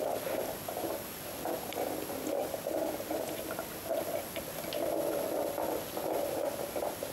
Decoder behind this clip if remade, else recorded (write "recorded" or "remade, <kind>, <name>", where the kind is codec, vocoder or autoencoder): recorded